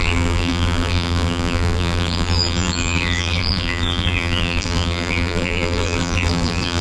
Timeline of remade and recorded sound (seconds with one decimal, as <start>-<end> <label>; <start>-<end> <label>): 0.0-6.8 remade